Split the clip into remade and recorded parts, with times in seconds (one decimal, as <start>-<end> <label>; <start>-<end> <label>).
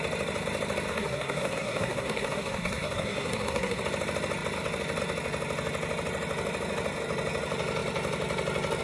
0.0-0.9 recorded; 0.9-3.8 remade; 3.8-8.8 recorded